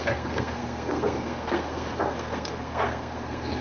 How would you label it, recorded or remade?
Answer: remade